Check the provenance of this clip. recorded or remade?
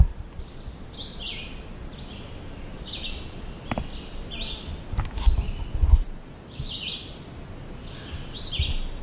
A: recorded